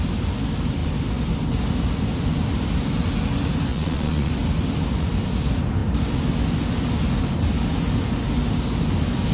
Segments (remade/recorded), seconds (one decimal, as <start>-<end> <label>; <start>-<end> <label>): 0.0-3.7 recorded; 3.7-4.3 remade; 4.3-9.3 recorded